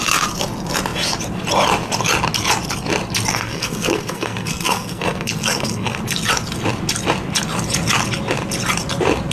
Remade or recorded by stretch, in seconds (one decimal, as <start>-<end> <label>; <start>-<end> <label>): 0.0-3.3 recorded; 3.3-6.0 remade; 6.0-9.3 recorded